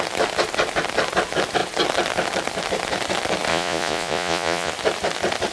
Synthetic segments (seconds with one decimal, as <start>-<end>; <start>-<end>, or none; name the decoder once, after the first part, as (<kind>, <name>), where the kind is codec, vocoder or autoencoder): 3.5-4.7 (vocoder, Vocos)

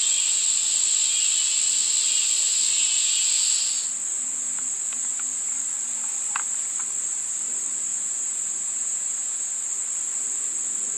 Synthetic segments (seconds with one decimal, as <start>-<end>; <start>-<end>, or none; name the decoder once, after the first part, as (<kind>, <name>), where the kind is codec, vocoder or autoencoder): 2.8-3.4 (vocoder, Vocos); 7.9-9.6

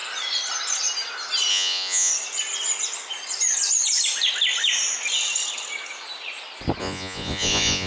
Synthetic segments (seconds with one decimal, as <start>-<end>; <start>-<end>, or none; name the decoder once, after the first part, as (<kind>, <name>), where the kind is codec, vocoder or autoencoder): 1.5-2.1 (vocoder, Vocos); 6.8-7.9

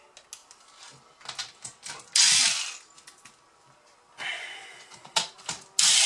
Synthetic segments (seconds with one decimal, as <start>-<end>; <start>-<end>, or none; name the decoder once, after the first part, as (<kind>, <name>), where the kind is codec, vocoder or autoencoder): 4.3-5.1 (vocoder, Vocos)

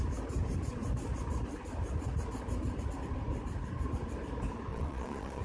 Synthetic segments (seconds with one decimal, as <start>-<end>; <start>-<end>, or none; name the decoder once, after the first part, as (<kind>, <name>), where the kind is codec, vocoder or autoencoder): 4.7-5.4 (vocoder, Vocos)